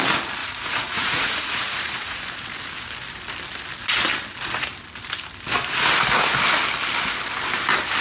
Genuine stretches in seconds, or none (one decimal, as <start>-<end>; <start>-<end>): 0.0-0.4; 2.2-8.0